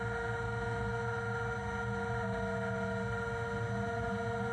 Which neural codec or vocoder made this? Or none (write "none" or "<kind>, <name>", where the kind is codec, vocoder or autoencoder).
none